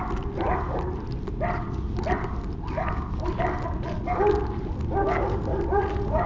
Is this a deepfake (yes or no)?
no